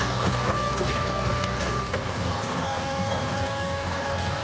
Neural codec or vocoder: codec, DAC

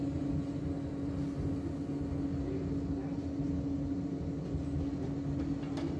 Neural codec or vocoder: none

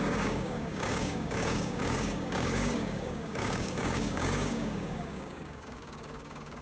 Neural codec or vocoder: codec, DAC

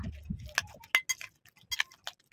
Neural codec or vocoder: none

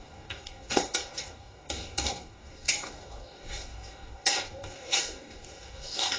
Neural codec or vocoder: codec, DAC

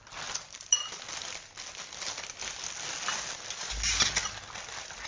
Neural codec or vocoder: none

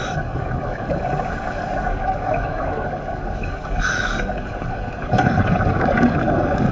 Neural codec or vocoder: codec, DAC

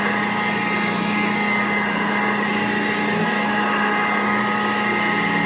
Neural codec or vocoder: none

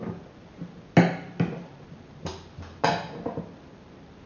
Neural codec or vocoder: none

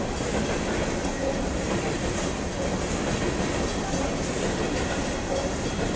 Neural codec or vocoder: none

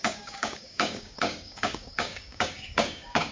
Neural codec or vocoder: codec, DAC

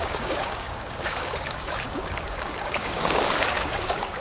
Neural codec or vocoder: codec, DAC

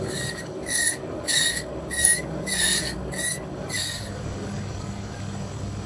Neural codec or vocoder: codec, DAC